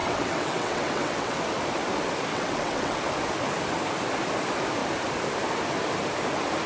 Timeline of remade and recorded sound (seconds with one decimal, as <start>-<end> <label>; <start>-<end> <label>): 0.0-1.4 remade; 1.4-2.3 recorded; 2.3-3.0 remade; 3.0-6.7 recorded